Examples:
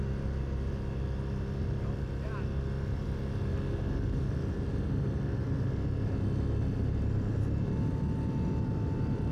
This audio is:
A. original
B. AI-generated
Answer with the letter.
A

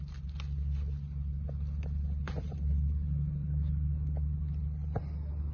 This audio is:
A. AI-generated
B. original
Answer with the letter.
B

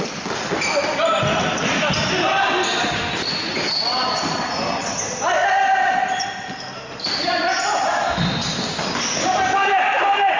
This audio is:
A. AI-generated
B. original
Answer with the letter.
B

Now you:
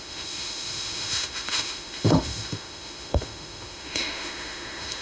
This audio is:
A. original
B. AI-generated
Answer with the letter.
B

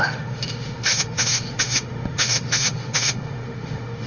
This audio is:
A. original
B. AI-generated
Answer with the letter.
B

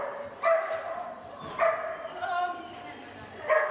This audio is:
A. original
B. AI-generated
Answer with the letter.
A